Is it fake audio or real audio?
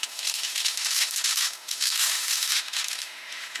fake